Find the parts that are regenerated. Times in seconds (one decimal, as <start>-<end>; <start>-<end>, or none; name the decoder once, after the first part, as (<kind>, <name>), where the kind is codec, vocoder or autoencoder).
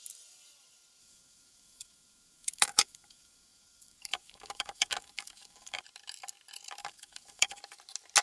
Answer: 1.0-5.8 (codec, DAC); 6.8-7.6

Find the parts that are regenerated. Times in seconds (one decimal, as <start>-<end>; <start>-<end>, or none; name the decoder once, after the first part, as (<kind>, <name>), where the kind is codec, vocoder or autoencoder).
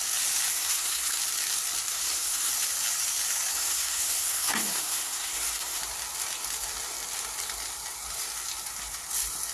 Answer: 0.5-1.2 (codec, SNAC); 1.9-2.5; 3.5-5.8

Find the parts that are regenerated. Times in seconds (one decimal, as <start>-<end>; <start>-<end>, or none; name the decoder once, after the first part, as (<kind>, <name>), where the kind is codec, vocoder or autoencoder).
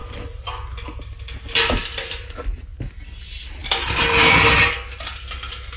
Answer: none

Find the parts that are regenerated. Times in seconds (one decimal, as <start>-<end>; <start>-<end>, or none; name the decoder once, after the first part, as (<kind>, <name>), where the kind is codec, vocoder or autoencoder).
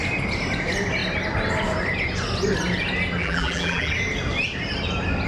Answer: 3.2-3.9 (vocoder, BigVGAN v2)